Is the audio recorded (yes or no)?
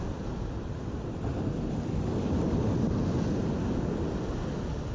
yes